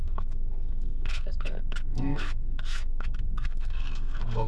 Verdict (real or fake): fake